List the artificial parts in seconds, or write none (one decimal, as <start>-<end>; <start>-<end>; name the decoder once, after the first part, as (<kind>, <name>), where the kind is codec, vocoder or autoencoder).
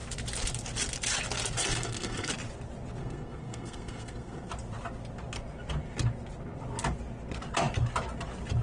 1.6-2.3 (codec, SNAC); 3.0-4.5